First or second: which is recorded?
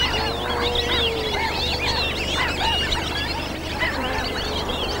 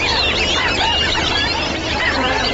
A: first